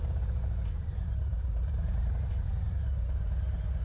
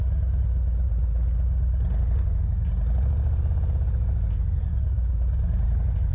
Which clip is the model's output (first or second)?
first